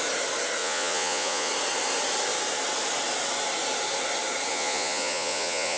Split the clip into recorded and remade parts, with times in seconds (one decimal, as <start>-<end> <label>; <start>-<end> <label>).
0.0-0.6 recorded; 0.6-1.5 remade; 1.5-4.5 recorded; 4.5-5.8 remade